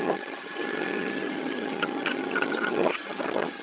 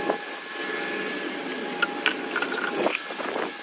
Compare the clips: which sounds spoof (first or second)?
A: first